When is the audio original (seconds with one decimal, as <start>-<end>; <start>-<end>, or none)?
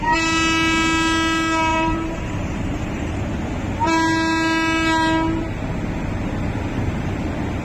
0.0-1.7; 3.2-7.6